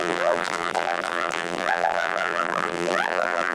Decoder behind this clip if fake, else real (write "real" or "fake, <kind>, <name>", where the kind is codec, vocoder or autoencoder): fake, vocoder, BigVGAN v2